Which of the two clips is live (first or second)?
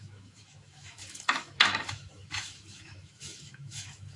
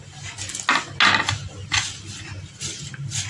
second